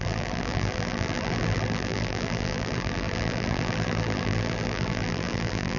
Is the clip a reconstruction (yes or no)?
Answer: yes